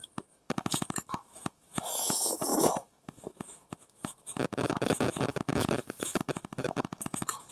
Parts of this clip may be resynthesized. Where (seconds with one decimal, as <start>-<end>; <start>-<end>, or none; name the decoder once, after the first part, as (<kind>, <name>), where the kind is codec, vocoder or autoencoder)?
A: 0.0-7.5 (autoencoder, DAC-VAE)